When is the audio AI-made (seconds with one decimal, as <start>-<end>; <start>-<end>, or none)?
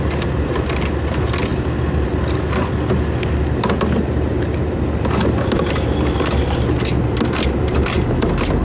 none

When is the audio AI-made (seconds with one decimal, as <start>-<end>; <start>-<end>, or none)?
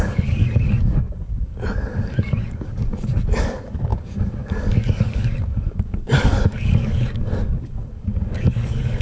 0.0-9.0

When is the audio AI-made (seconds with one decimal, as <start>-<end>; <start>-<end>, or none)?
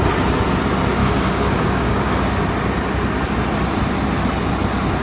1.0-2.4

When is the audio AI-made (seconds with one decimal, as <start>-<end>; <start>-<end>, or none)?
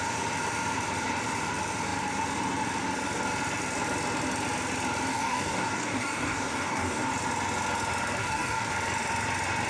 5.1-7.1; 8.2-8.7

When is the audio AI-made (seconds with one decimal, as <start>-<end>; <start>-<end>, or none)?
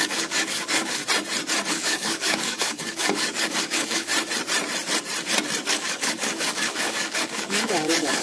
0.0-1.0; 1.7-4.1; 5.7-8.2